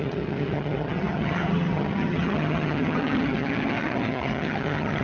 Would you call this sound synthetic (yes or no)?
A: yes